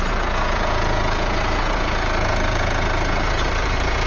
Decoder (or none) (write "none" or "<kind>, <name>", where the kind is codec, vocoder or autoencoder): vocoder, Vocos